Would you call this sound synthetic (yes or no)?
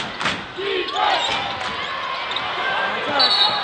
no